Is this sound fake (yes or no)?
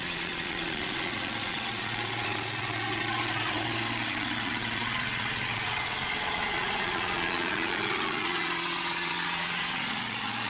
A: yes